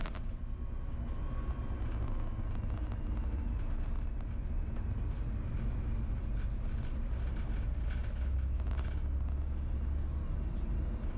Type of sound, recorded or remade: recorded